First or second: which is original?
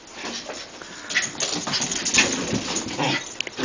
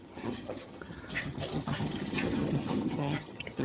first